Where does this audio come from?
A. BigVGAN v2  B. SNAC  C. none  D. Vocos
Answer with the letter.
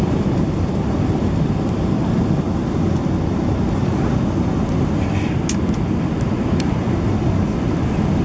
C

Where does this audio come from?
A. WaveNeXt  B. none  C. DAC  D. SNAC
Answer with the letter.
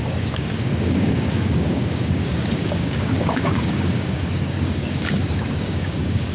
C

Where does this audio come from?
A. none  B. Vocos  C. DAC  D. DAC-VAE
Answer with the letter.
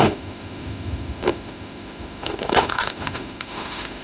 D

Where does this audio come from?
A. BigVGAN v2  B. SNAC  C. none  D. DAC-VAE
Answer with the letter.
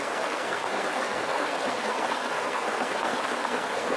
B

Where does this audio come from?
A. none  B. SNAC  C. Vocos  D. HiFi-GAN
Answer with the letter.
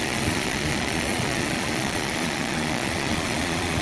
C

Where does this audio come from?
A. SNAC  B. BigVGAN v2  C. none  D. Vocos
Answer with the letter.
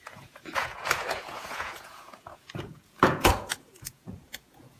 D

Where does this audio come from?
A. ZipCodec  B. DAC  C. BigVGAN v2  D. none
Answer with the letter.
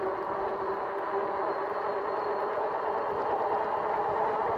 C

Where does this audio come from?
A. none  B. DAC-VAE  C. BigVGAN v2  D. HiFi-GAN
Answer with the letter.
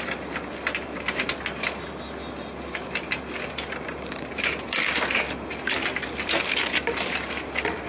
A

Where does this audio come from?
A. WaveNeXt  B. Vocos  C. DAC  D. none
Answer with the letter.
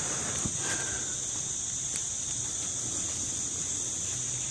D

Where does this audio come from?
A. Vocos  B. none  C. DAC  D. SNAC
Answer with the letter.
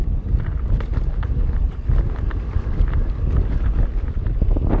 B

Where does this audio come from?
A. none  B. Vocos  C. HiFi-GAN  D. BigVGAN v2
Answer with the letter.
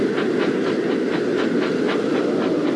A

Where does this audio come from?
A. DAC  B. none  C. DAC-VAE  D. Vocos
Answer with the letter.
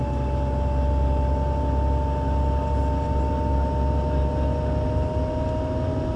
B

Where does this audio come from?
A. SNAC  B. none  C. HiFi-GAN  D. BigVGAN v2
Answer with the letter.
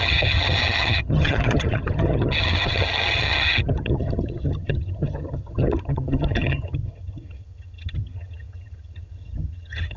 C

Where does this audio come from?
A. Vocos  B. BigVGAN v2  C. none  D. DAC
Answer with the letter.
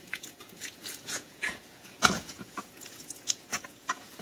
A